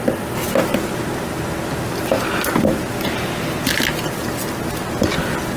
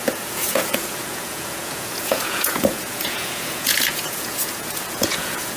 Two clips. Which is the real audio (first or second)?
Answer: first